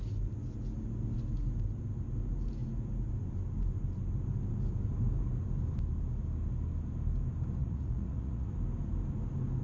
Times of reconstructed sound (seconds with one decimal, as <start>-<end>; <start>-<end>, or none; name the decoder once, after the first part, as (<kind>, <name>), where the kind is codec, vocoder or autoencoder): 7.6-8.5 (vocoder, Vocos)